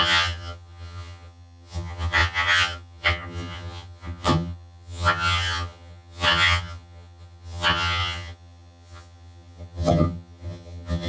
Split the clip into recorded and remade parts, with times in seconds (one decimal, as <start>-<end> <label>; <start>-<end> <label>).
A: 0.0-11.1 remade